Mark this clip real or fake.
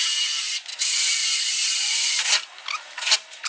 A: real